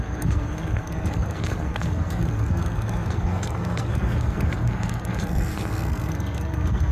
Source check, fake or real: fake